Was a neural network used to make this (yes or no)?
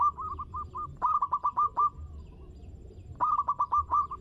no